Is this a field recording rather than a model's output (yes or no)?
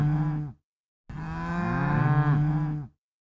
yes